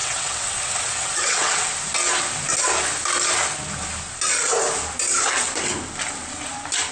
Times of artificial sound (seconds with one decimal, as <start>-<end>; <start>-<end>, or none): 0.0-1.7